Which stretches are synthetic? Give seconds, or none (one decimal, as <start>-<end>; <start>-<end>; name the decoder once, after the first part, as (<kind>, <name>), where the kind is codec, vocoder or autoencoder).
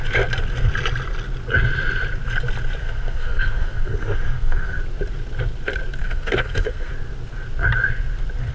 2.8-4.8 (codec, SNAC); 6.0-6.9